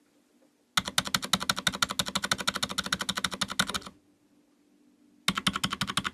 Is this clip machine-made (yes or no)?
no